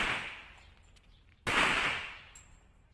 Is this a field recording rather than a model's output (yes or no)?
no